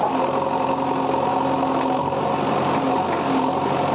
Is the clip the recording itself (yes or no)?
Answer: yes